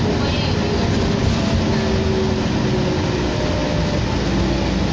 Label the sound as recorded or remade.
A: recorded